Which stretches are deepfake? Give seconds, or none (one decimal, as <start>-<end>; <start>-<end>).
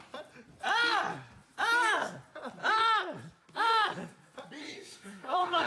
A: 4.6-5.7